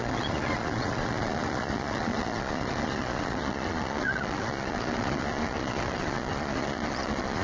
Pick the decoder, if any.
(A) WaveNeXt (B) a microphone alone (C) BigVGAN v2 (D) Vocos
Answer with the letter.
D